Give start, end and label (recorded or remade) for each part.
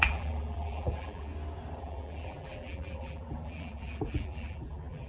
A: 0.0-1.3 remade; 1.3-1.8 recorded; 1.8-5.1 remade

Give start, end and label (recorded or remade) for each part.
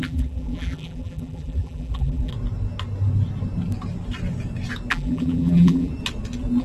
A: 0.0-2.3 remade; 2.3-4.9 recorded; 4.9-5.9 remade; 5.9-6.6 recorded